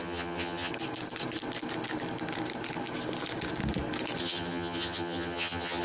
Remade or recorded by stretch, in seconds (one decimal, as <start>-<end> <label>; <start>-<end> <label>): 0.0-0.7 remade; 0.7-4.2 recorded; 4.2-5.8 remade